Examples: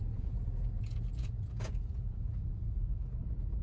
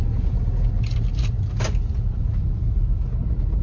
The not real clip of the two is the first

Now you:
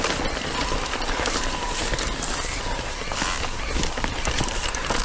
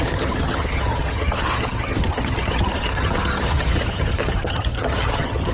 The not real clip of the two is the second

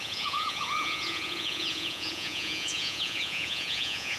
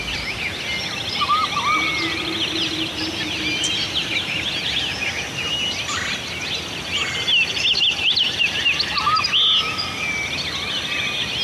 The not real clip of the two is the first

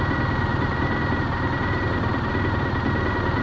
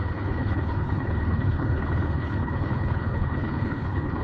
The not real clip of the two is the second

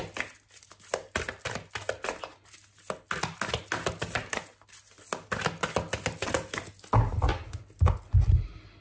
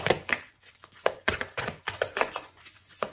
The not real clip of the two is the second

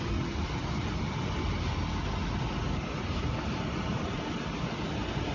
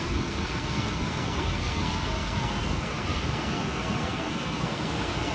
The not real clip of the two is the second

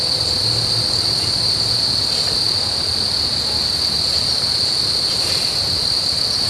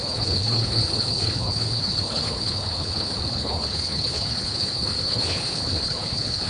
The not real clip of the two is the second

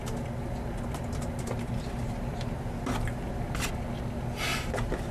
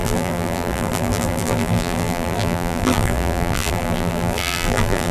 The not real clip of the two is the second